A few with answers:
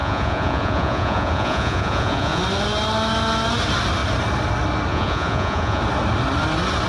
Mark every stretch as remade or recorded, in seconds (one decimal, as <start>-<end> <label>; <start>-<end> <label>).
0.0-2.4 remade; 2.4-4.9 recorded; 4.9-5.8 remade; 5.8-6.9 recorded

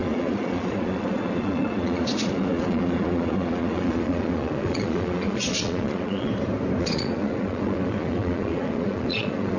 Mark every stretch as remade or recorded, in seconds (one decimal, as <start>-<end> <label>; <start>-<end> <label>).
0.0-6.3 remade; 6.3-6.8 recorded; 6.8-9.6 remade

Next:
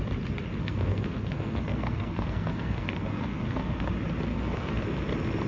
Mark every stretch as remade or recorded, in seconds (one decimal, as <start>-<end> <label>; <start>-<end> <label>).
0.0-0.6 recorded; 0.6-3.9 remade; 3.9-4.3 recorded; 4.3-4.8 remade; 4.8-5.5 recorded

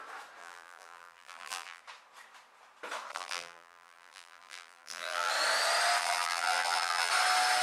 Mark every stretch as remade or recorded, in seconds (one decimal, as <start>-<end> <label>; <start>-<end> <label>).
0.0-0.4 recorded; 0.4-1.8 remade; 1.8-3.1 recorded; 3.1-5.3 remade; 5.3-6.0 recorded; 6.0-7.1 remade; 7.1-7.6 recorded

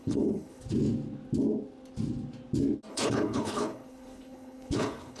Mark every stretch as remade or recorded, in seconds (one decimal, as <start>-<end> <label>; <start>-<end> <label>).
0.0-0.6 remade; 0.6-2.9 recorded; 2.9-5.2 remade

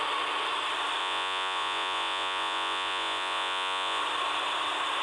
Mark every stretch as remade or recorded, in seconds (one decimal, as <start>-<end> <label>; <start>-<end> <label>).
0.0-1.0 recorded; 1.0-4.0 remade; 4.0-5.0 recorded